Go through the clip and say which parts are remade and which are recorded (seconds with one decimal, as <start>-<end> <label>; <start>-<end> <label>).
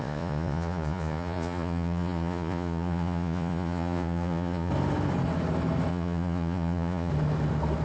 0.0-4.7 remade; 4.7-5.9 recorded; 5.9-7.1 remade; 7.1-7.8 recorded